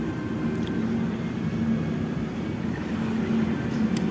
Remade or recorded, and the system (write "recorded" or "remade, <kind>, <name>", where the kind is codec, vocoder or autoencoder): recorded